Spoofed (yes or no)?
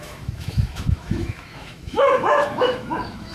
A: yes